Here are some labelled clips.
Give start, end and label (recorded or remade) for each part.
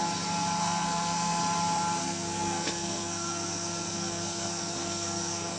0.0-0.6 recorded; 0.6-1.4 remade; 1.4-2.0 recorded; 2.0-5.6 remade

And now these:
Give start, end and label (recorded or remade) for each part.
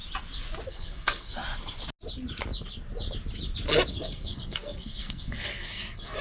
0.0-0.7 recorded; 0.7-1.4 remade; 1.4-3.9 recorded; 3.9-6.2 remade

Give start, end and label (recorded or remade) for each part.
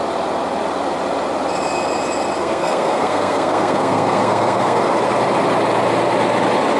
0.0-2.4 recorded; 2.4-4.8 remade; 4.8-6.8 recorded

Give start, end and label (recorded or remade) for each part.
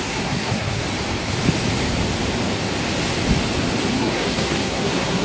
0.0-0.8 remade; 0.8-3.9 recorded; 3.9-5.2 remade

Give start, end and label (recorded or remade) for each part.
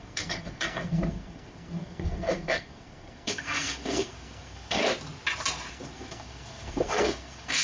0.0-4.8 remade; 4.8-5.7 recorded; 5.7-7.6 remade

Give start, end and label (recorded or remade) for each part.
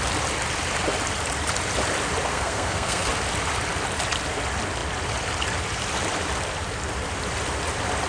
0.0-2.3 recorded; 2.3-3.1 remade; 3.1-8.1 recorded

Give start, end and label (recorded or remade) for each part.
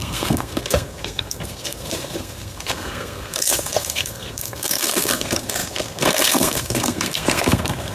0.0-7.9 remade